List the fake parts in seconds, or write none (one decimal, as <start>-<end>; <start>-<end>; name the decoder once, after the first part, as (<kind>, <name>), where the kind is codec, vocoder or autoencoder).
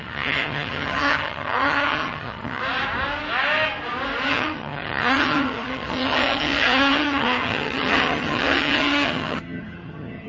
0.0-2.6 (vocoder, HiFi-GAN); 4.3-10.3